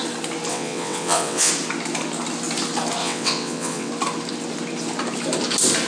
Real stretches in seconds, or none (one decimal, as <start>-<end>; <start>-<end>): 0.0-0.5; 1.5-3.0; 3.9-5.9